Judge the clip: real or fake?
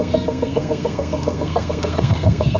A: fake